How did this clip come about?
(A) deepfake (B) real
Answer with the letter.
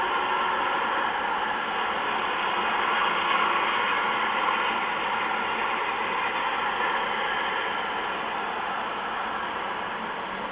B